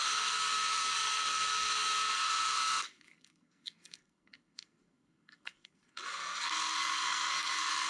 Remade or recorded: remade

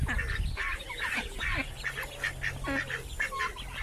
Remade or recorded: recorded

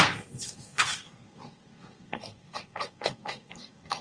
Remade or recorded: remade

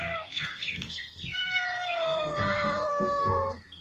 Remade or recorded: remade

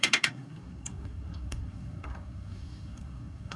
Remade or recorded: remade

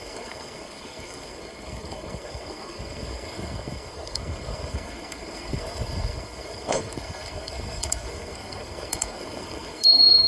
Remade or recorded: remade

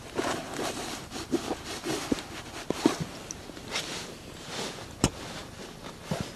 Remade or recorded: recorded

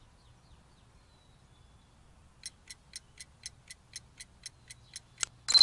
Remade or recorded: recorded